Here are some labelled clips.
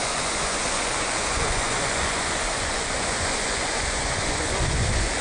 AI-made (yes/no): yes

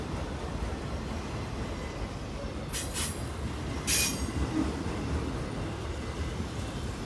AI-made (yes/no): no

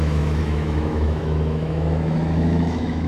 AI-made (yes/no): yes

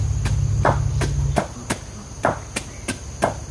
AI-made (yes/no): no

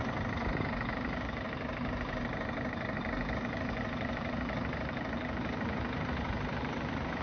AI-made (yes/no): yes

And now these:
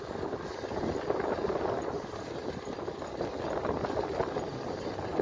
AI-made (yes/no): no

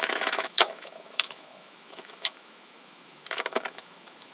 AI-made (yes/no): yes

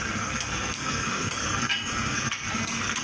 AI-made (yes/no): yes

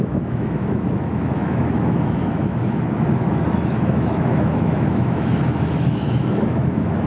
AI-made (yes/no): yes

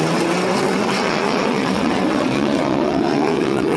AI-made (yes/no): yes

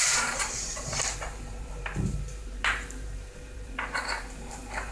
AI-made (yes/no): yes